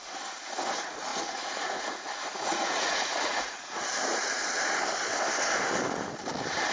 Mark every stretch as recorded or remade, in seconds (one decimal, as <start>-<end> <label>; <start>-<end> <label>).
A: 0.0-1.1 recorded; 1.1-3.8 remade; 3.8-6.7 recorded